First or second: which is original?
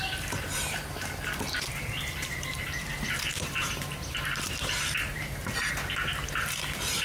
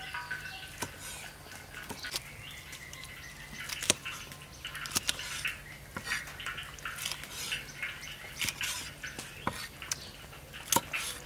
second